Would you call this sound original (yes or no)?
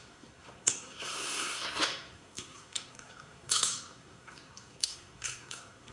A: no